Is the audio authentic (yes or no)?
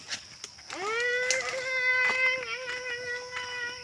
yes